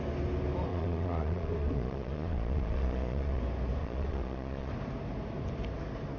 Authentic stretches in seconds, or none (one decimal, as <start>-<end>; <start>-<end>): 0.0-0.7; 3.4-3.8; 4.7-6.2